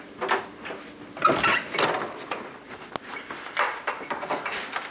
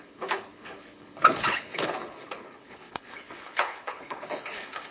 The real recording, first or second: first